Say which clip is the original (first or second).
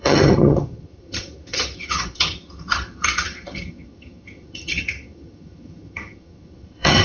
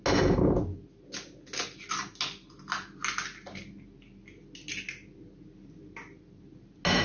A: second